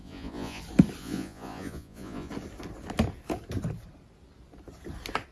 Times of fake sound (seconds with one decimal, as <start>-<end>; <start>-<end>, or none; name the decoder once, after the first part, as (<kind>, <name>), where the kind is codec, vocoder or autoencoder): 0.0-0.6 (vocoder, Vocos); 1.0-2.3